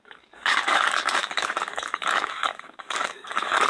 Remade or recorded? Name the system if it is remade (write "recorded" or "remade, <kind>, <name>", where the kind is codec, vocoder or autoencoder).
remade, codec, DAC